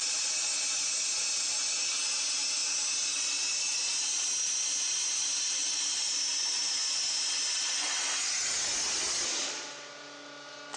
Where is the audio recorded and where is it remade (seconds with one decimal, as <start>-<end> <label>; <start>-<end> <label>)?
0.0-10.8 recorded